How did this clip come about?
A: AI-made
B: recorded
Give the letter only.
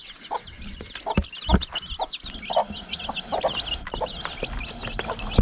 B